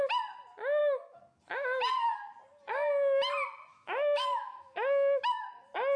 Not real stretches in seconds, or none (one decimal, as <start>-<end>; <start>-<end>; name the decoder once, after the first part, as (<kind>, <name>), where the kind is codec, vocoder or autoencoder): 0.8-1.4 (autoencoder, DAC-VAE); 3.7-5.5